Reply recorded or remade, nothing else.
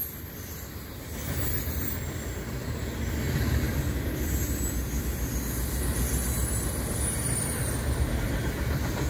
recorded